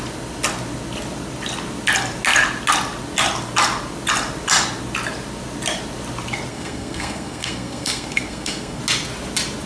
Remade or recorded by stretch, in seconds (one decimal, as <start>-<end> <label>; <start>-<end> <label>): 0.0-6.5 recorded; 6.5-8.8 remade; 8.8-9.7 recorded